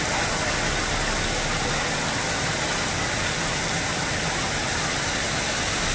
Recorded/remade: recorded